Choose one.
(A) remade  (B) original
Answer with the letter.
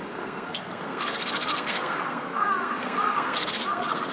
A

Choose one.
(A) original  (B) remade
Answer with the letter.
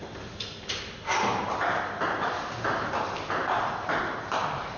A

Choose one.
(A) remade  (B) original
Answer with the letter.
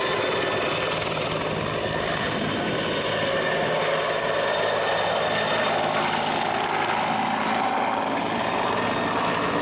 B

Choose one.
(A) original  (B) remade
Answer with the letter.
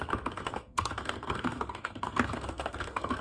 B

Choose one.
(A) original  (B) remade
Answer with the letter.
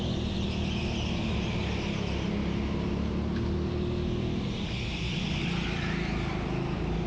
A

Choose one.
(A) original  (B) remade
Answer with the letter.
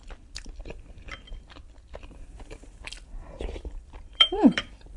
B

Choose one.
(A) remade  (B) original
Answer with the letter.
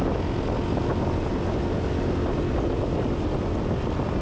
B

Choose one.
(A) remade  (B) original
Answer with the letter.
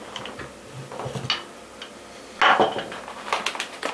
B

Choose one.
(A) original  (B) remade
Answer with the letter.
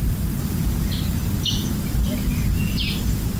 A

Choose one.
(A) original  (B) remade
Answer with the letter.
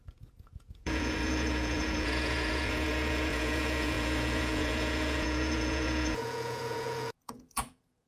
B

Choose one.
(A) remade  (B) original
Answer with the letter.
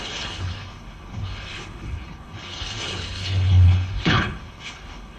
A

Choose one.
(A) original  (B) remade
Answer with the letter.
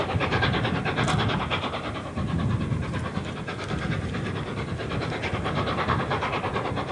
A